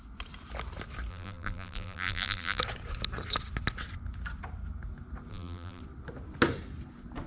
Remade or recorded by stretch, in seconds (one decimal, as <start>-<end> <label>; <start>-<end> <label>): 0.0-1.1 recorded; 1.1-2.6 remade; 2.6-5.3 recorded; 5.3-5.8 remade; 5.8-7.3 recorded